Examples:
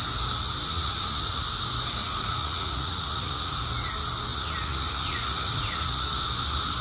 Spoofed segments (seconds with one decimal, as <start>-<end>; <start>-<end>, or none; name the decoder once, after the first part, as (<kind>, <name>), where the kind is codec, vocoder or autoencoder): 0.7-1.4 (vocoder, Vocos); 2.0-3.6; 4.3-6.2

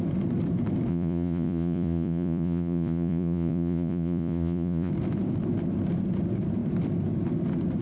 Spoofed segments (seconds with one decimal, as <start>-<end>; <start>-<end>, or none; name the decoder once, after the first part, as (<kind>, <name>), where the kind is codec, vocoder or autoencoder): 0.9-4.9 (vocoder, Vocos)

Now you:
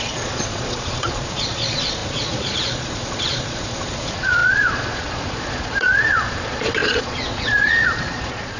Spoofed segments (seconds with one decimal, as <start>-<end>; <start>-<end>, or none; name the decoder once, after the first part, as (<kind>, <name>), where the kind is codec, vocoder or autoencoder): 0.0-8.6 (vocoder, Vocos)

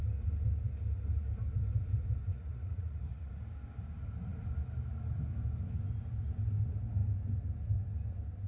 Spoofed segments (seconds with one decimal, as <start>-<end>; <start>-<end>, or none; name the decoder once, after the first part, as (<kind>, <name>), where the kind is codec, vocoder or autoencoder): 2.2-3.3 (vocoder, Vocos)

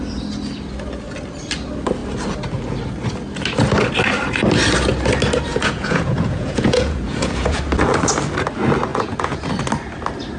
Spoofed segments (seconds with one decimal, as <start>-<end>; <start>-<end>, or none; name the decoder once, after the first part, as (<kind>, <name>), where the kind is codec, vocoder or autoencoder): 5.5-7.6 (vocoder, Vocos); 8.9-9.5

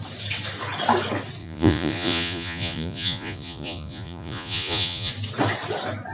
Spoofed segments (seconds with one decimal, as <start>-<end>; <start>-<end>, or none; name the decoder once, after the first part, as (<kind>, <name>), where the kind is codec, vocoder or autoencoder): 1.4-5.1 (vocoder, Vocos)